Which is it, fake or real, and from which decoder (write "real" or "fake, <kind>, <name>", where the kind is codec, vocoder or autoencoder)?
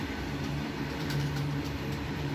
fake, vocoder, BigVGAN v2